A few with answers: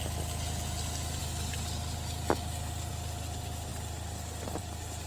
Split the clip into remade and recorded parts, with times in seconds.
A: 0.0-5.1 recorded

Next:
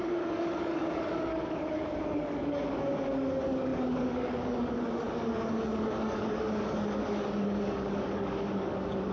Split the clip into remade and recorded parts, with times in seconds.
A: 0.0-9.1 remade

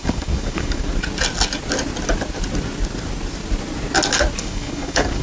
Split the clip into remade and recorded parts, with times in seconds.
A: 0.0-0.9 remade; 0.9-4.4 recorded; 4.4-5.2 remade

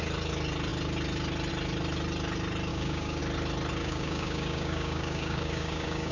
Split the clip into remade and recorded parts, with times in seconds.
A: 0.0-2.7 recorded; 2.7-3.2 remade; 3.2-3.8 recorded; 3.8-6.1 remade

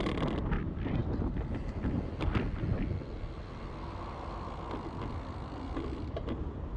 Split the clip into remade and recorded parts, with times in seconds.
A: 0.0-6.8 recorded

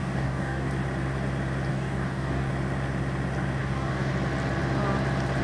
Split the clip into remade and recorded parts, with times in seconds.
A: 0.0-0.7 remade; 0.7-1.7 recorded; 1.7-2.5 remade; 2.5-3.6 recorded; 3.6-4.1 remade; 4.1-5.4 recorded